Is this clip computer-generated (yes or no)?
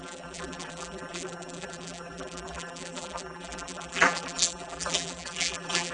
yes